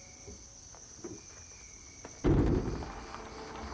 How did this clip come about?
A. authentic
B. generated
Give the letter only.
A